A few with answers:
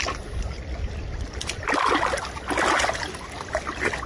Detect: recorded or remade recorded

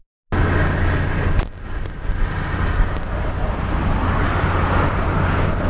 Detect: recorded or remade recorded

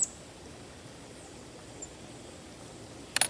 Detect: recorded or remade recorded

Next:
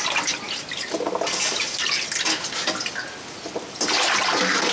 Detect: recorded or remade recorded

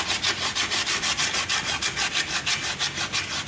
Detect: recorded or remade recorded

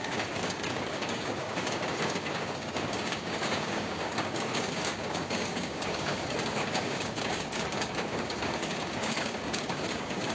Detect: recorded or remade remade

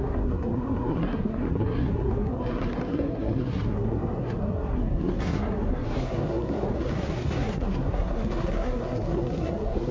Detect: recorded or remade remade